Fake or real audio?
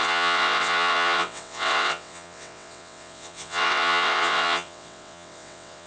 fake